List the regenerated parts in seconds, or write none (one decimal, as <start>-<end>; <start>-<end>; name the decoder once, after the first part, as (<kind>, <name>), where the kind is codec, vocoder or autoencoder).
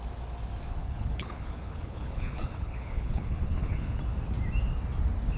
0.8-4.0 (codec, HILCodec)